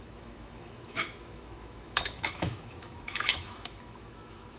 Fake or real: fake